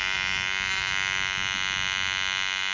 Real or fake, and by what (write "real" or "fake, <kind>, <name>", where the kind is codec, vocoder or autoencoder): real